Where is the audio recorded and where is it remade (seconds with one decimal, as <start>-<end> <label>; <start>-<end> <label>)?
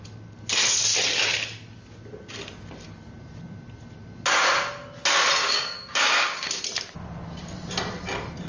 0.0-5.4 recorded; 5.4-6.6 remade; 6.6-8.5 recorded